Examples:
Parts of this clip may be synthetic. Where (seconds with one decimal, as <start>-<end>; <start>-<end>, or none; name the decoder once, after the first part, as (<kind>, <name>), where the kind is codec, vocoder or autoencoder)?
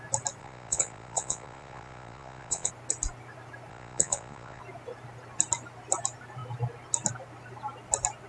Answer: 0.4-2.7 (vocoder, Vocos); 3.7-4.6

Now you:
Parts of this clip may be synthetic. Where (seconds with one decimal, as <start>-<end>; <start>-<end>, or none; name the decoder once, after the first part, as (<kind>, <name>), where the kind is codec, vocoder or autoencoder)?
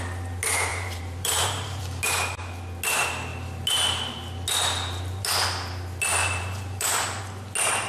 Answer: 0.7-1.8 (vocoder, BigVGAN v2); 6.2-7.2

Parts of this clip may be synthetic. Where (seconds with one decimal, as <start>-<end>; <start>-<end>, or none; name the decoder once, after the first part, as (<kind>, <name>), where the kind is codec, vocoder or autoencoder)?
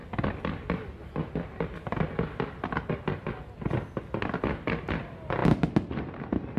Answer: none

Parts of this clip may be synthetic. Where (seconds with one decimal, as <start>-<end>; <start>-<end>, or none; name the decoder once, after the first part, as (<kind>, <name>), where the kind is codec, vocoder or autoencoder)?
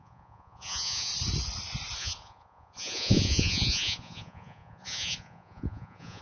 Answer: 0.0-1.1 (vocoder, Vocos); 2.0-6.2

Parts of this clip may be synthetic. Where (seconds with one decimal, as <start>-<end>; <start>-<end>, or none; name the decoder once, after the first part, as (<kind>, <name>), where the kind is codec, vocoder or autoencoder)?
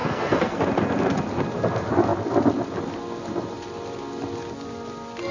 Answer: 0.0-0.6 (codec, SNAC)